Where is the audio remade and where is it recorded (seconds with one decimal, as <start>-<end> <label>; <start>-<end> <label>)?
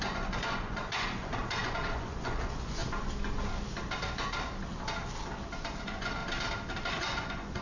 0.0-2.8 remade; 2.8-5.8 recorded; 5.8-6.2 remade; 6.2-6.9 recorded; 6.9-7.6 remade